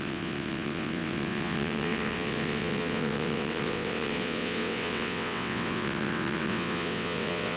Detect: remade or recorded remade